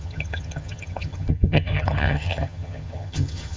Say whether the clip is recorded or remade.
remade